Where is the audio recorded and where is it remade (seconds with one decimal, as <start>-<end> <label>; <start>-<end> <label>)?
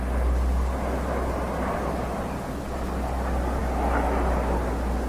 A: 0.0-5.1 recorded